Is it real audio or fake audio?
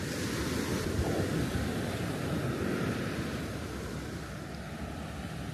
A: real